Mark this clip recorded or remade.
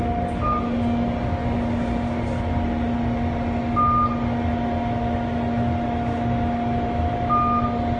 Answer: recorded